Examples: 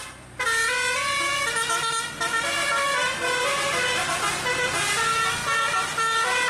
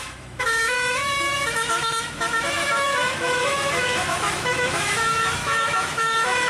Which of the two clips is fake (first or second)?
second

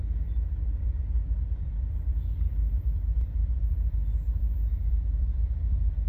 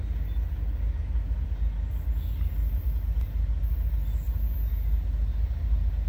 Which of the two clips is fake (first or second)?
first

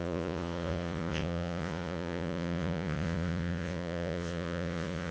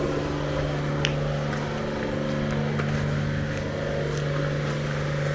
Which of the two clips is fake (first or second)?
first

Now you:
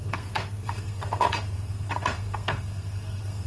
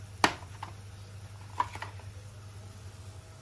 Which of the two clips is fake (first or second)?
first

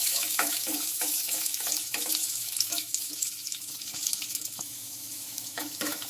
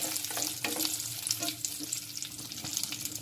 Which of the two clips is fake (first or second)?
first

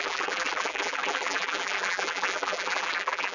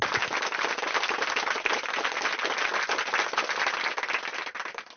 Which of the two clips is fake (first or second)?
first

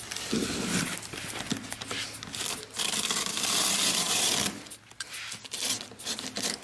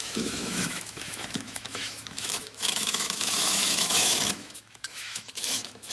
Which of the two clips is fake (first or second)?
second